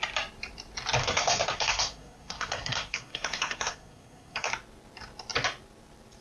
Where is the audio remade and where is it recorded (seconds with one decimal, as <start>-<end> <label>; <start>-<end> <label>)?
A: 0.0-1.0 recorded; 1.0-4.5 remade; 4.5-6.2 recorded